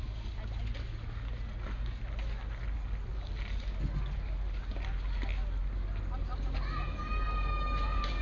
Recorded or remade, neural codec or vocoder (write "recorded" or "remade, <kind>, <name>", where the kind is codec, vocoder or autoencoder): recorded